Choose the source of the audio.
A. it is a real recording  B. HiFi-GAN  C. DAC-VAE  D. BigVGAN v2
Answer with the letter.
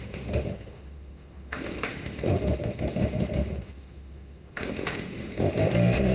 C